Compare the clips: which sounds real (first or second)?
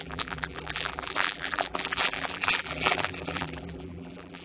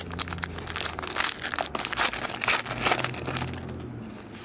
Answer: second